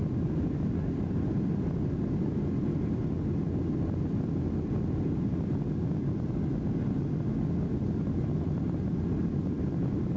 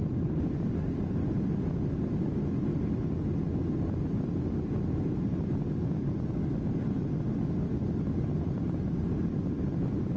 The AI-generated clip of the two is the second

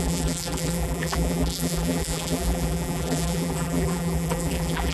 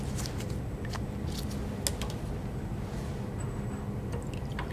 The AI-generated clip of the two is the first